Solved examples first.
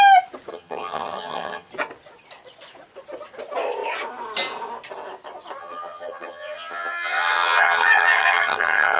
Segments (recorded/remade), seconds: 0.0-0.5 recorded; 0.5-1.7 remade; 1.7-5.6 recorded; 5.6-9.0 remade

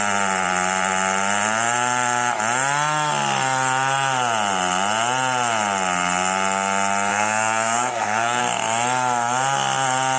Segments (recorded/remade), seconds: 0.0-7.1 recorded; 7.1-8.4 remade; 8.4-10.2 recorded

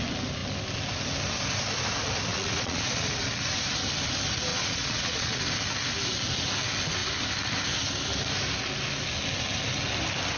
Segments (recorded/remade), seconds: 0.0-2.3 recorded; 2.3-3.1 remade; 3.1-4.5 recorded; 4.5-5.4 remade; 5.4-10.4 recorded